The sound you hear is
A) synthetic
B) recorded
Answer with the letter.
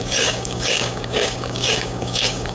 A